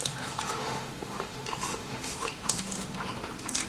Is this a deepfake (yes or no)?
yes